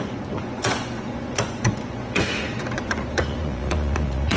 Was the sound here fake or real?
fake